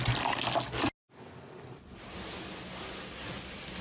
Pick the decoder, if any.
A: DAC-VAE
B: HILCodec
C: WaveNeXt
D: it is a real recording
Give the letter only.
D